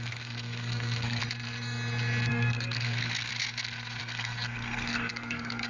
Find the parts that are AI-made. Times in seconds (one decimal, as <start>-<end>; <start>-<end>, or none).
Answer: 0.0-1.2; 2.3-3.3; 4.0-5.7